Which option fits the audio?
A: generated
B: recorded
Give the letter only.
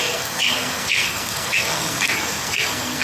A